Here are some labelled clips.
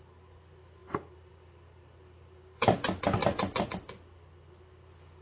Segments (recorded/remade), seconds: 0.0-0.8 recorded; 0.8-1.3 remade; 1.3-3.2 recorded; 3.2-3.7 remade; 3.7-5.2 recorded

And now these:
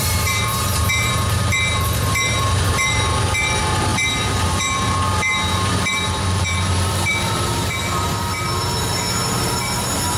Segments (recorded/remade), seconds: 0.0-10.2 remade

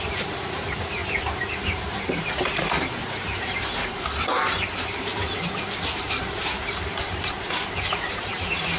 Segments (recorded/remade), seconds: 0.0-1.0 remade; 1.0-1.8 recorded; 1.8-8.8 remade

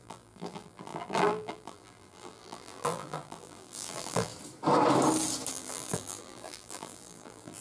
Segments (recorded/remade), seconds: 0.0-4.3 remade; 4.3-5.5 recorded; 5.5-7.6 remade

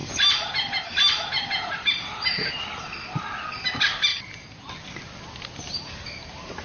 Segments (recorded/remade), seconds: 0.0-2.5 remade; 2.5-4.1 recorded; 4.1-4.7 remade; 4.7-6.6 recorded

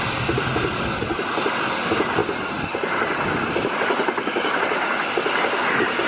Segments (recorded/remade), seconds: 0.0-6.1 recorded

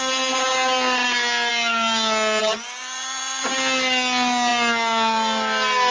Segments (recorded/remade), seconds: 0.0-2.4 recorded; 2.4-3.4 remade; 3.4-5.9 recorded